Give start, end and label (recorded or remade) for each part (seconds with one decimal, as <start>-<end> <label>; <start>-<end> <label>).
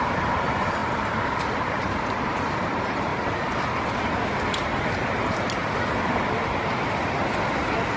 0.0-3.1 remade; 3.1-4.5 recorded; 4.5-5.6 remade; 5.6-8.0 recorded